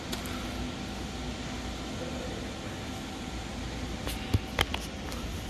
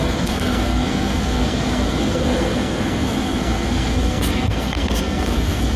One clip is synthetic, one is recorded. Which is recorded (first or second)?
first